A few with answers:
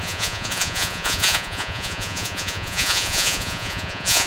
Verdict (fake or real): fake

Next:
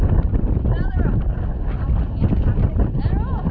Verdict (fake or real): real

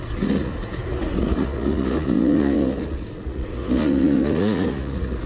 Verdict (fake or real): fake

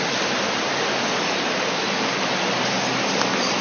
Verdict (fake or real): real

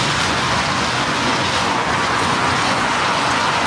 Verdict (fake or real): fake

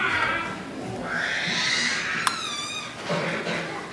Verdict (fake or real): real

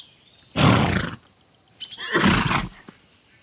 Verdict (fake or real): real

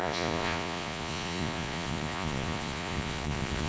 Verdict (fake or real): fake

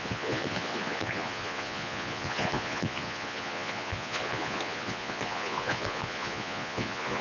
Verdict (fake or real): fake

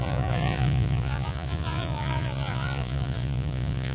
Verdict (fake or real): fake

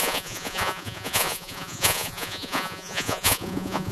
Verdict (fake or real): fake